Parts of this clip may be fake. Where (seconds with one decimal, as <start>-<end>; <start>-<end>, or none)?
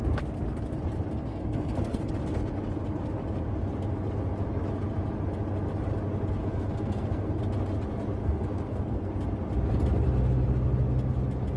1.3-2.1; 6.4-7.4; 8.2-9.1